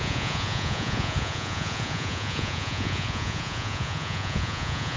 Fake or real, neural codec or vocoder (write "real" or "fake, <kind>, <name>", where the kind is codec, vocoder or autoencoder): fake, vocoder, Vocos